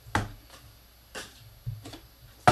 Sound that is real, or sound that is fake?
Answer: real